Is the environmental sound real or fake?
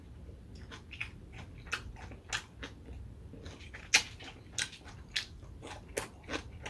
real